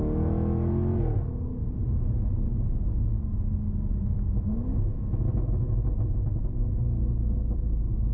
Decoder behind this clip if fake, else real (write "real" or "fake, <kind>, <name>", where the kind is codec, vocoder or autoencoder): real